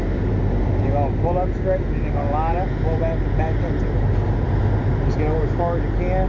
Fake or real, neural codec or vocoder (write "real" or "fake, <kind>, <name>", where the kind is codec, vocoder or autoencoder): real